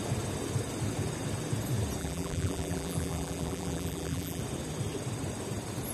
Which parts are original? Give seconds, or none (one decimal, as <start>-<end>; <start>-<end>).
0.0-2.0; 4.4-5.9